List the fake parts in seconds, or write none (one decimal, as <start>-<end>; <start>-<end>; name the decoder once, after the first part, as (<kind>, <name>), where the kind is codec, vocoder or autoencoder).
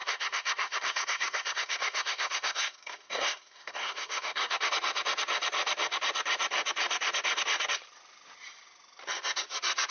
0.0-4.7 (codec, SNAC)